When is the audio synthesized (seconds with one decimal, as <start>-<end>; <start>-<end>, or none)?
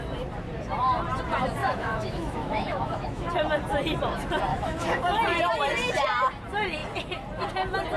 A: 1.6-3.3; 4.5-5.2